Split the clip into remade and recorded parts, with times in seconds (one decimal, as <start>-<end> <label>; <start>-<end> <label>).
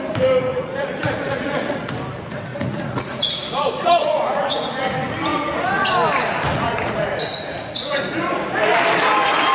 0.0-0.5 recorded; 0.5-1.9 remade; 1.9-2.5 recorded; 2.5-4.7 remade; 4.7-5.3 recorded; 5.3-5.9 remade; 5.9-6.5 recorded; 6.5-8.5 remade; 8.5-9.5 recorded